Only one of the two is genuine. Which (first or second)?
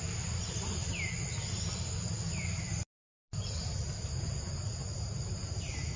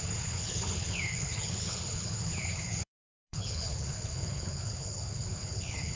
first